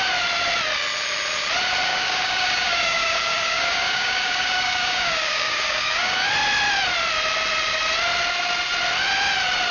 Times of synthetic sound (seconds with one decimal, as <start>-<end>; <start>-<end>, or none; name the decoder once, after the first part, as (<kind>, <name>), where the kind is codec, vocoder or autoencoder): 1.9-6.3 (codec, DAC)